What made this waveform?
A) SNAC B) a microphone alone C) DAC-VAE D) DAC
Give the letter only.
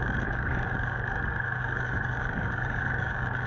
D